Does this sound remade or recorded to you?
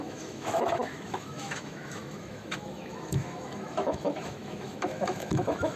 remade